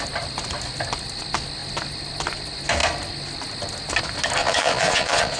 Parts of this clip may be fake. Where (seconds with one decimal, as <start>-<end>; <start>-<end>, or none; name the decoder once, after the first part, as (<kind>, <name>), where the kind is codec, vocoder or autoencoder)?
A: 4.4-5.4 (vocoder, Vocos)